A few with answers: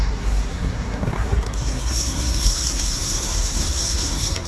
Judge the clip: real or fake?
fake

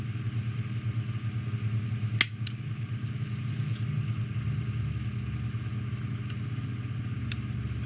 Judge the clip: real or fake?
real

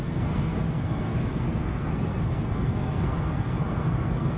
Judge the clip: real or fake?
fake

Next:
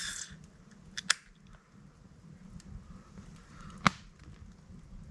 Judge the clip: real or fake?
real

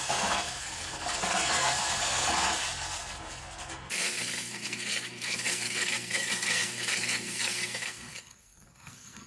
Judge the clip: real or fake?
fake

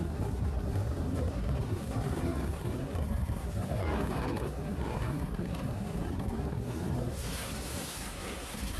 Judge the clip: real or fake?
fake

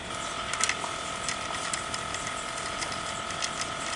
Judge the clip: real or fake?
real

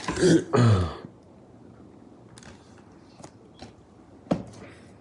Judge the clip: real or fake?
real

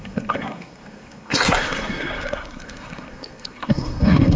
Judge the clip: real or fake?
fake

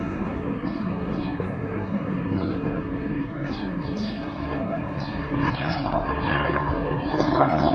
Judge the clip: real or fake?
fake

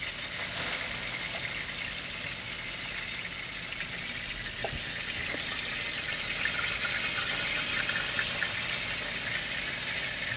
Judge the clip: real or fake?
real